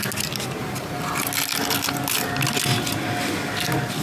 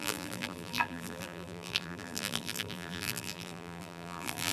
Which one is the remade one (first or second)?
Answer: second